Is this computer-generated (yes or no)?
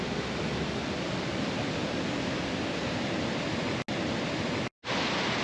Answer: no